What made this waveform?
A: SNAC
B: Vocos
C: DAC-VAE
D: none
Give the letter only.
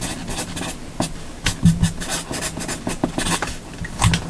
D